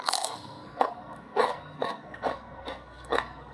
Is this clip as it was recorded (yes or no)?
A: no